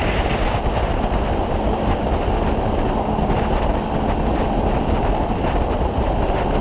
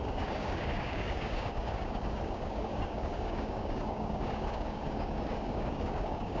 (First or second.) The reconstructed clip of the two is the second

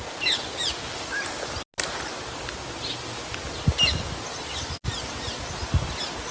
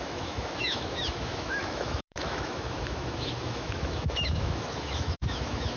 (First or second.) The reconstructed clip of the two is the second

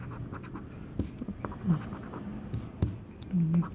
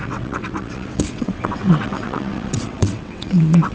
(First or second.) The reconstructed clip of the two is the second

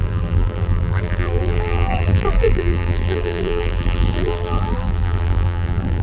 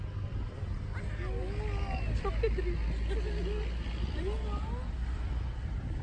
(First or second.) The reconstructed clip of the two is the first